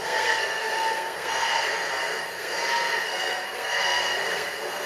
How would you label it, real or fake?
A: fake